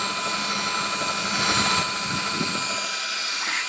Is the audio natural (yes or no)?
yes